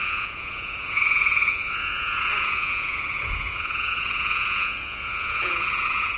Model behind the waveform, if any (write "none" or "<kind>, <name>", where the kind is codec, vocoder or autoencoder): vocoder, Vocos